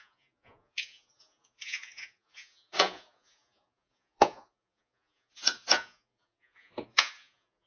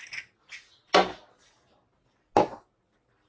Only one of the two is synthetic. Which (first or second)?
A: first